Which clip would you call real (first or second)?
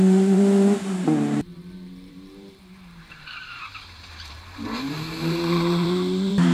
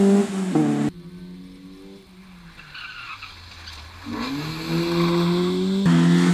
second